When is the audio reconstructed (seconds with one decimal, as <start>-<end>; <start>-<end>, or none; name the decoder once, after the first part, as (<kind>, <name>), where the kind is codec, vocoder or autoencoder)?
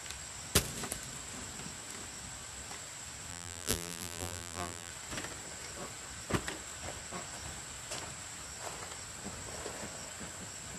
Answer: 3.3-4.9 (vocoder, BigVGAN v2)